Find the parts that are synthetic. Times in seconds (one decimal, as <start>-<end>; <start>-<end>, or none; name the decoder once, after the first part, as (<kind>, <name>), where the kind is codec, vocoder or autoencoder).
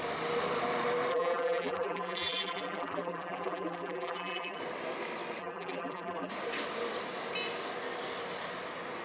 1.1-4.6 (vocoder, BigVGAN v2); 5.4-6.3